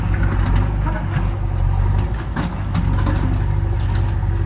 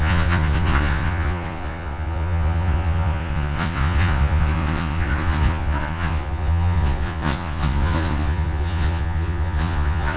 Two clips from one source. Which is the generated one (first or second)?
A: second